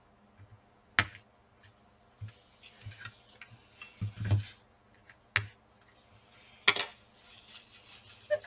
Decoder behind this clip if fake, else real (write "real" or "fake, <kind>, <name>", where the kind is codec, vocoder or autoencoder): real